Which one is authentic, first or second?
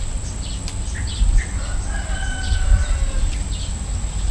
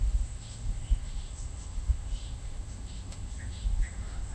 first